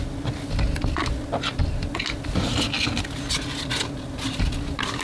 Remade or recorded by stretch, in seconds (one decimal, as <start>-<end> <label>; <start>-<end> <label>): 0.0-5.0 recorded